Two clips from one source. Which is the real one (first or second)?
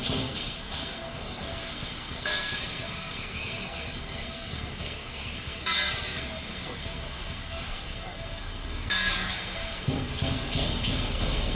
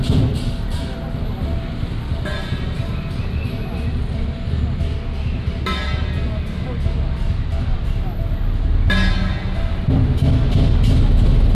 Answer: second